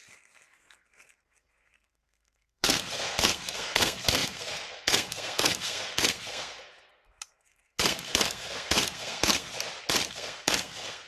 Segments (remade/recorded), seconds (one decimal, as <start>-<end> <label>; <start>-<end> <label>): 0.0-9.5 remade; 9.5-10.1 recorded; 10.1-11.1 remade